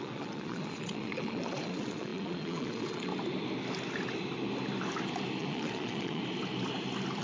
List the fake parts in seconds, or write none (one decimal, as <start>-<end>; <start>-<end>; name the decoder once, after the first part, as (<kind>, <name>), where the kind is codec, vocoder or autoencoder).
0.0-3.1 (vocoder, Vocos); 5.4-6.2